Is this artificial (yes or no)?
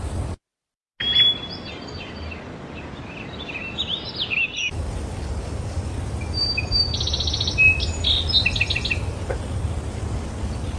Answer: no